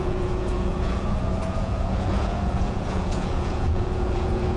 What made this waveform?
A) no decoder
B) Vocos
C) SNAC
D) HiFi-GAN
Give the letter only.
B